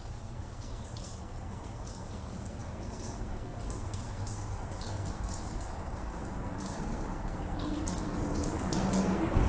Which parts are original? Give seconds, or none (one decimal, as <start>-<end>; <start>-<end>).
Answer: none